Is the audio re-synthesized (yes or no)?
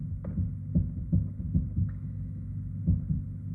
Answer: no